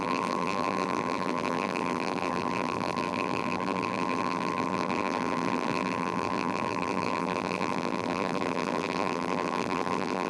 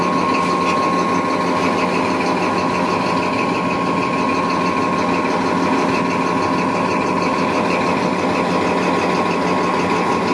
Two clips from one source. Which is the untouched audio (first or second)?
second